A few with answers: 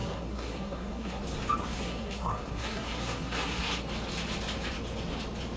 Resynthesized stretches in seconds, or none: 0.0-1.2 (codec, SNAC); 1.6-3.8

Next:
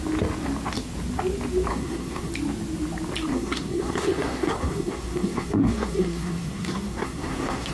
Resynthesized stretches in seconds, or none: 1.7-2.3 (codec, SNAC); 3.3-7.7

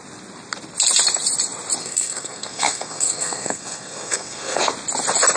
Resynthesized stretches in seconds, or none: 1.8-4.6 (codec, SNAC)